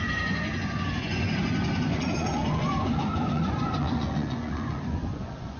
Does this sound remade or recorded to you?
remade